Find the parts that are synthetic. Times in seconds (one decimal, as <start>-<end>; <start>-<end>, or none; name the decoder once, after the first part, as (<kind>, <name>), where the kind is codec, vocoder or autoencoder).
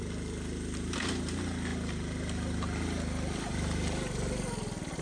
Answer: none